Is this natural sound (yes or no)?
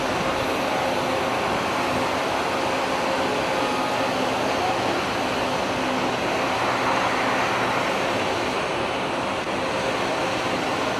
yes